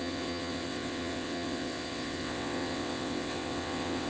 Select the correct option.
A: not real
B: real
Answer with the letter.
A